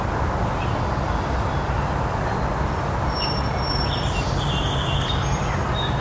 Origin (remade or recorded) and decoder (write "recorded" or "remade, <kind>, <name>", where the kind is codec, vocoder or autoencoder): recorded